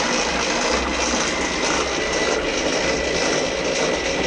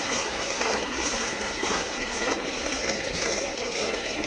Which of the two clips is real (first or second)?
first